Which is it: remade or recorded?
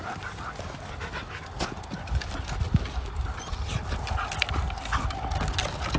recorded